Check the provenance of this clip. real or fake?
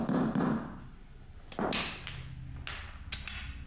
real